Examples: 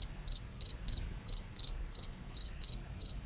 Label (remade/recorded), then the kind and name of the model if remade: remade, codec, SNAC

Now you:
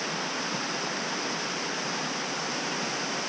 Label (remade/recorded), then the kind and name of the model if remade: recorded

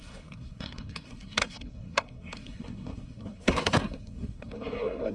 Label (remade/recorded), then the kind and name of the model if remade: remade, codec, SNAC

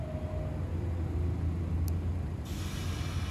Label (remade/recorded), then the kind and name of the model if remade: recorded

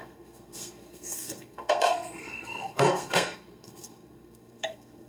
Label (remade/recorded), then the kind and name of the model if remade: remade, codec, SNAC